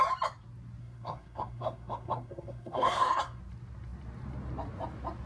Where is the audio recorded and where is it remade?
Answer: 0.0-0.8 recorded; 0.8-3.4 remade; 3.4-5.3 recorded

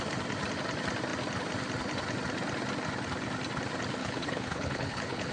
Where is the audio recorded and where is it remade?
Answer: 0.0-4.0 recorded; 4.0-5.3 remade

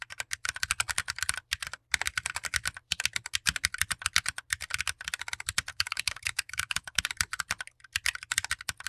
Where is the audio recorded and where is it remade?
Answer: 0.0-5.7 recorded; 5.7-7.0 remade; 7.0-8.9 recorded

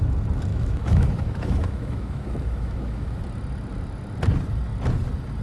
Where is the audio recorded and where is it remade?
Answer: 0.0-0.5 recorded; 0.5-3.2 remade; 3.2-5.4 recorded